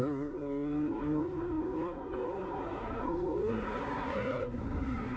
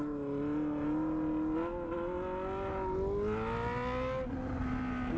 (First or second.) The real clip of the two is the second